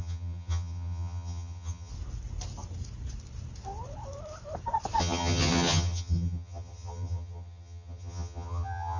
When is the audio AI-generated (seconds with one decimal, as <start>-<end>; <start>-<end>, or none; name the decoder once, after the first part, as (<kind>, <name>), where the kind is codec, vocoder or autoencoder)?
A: 0.0-1.9 (vocoder, HiFi-GAN); 5.0-9.0